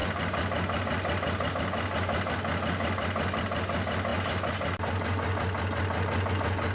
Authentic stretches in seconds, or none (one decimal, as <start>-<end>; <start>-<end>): 0.0-6.7